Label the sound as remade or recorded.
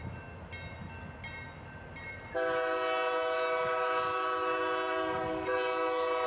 recorded